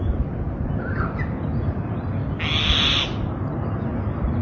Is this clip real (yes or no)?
yes